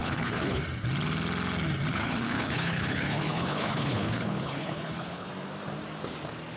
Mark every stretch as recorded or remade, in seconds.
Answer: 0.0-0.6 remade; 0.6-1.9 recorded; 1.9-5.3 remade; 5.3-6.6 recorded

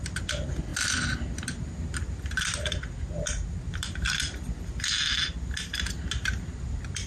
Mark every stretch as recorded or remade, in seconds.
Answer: 0.0-7.1 recorded

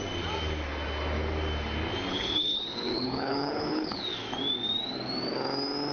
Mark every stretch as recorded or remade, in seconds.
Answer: 0.0-2.1 recorded; 2.1-4.0 remade; 4.0-5.9 recorded

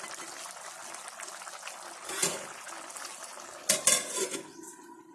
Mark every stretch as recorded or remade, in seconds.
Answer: 0.0-5.1 recorded

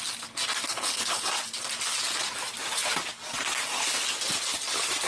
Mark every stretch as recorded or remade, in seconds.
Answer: 0.0-0.7 recorded; 0.7-1.3 remade; 1.3-5.1 recorded

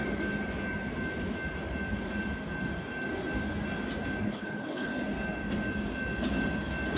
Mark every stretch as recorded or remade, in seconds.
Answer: 0.0-4.2 recorded; 4.2-4.9 remade; 4.9-7.0 recorded